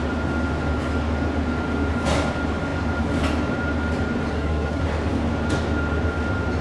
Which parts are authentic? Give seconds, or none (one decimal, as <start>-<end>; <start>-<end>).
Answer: 0.0-4.3; 4.8-6.6

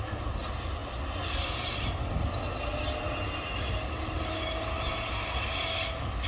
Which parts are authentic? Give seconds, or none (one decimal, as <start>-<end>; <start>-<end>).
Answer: 0.0-6.3